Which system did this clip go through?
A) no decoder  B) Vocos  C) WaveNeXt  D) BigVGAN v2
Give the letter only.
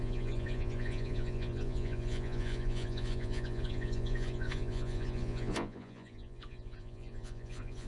B